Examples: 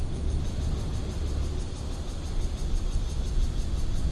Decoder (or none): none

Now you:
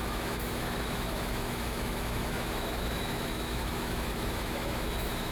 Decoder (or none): autoencoder, DAC-VAE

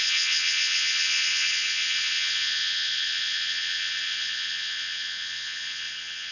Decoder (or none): vocoder, Vocos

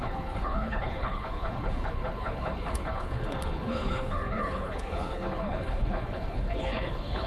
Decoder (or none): codec, HILCodec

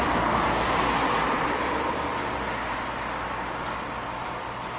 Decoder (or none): none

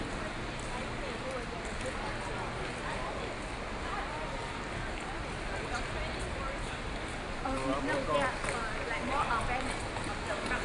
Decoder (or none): none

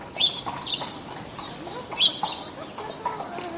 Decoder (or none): none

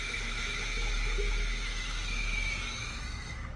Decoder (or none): autoencoder, DAC-VAE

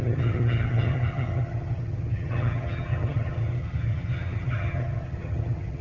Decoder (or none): vocoder, HiFi-GAN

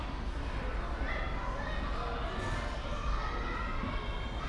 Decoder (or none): none